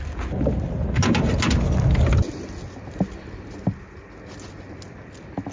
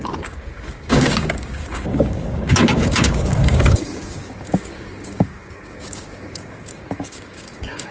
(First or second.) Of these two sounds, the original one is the first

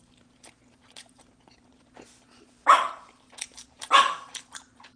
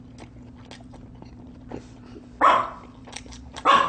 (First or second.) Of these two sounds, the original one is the second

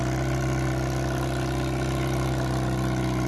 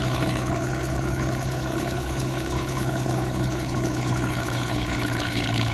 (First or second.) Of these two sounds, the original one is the first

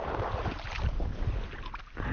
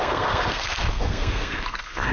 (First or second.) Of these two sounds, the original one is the first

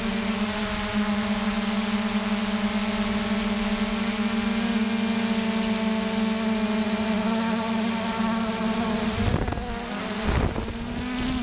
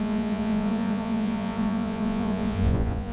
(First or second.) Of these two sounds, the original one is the first